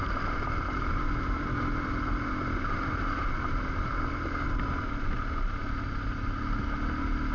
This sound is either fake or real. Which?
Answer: real